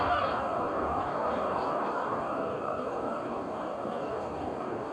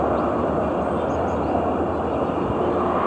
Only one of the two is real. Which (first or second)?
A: second